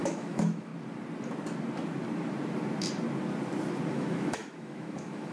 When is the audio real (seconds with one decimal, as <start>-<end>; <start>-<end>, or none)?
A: 0.7-3.9